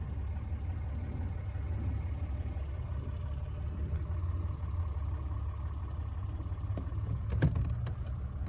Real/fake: real